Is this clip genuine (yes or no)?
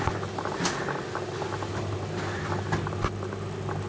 yes